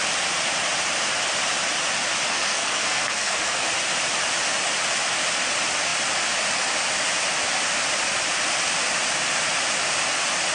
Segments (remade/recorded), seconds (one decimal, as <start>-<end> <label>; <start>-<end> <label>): 0.0-2.3 recorded; 2.3-3.7 remade; 3.7-10.5 recorded